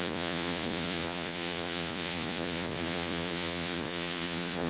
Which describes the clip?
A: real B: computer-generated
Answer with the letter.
B